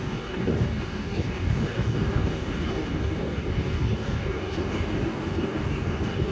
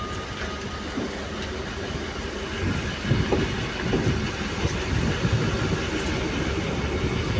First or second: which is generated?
first